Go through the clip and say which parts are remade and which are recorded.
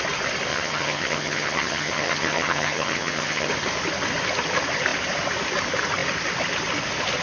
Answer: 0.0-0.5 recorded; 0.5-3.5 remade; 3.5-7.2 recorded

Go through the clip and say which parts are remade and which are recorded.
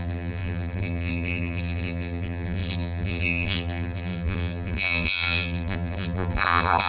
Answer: 0.0-6.9 remade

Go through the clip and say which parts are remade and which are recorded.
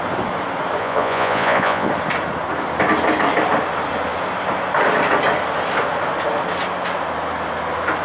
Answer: 0.0-0.8 recorded; 0.8-1.9 remade; 1.9-8.0 recorded